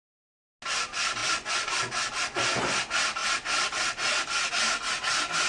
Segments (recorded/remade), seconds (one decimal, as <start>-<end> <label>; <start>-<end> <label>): 0.0-1.2 recorded; 1.2-1.9 remade; 1.9-5.5 recorded